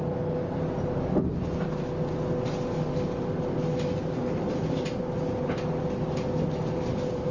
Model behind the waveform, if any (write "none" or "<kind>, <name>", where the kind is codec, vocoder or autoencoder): none